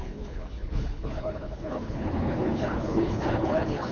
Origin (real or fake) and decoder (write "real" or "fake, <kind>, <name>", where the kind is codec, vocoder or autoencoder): fake, codec, HILCodec